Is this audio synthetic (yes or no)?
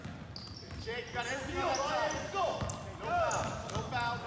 no